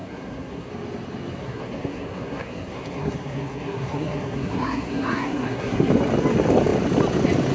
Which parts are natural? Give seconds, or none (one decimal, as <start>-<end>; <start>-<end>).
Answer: 0.7-1.4; 5.9-7.5